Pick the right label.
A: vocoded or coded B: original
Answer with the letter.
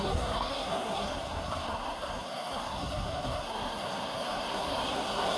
A